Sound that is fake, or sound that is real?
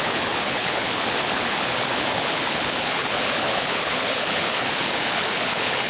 fake